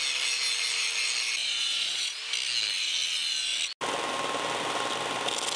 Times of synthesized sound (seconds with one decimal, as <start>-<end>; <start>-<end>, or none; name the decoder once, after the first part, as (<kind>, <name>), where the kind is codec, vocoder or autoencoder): 1.4-2.2 (vocoder, Vocos)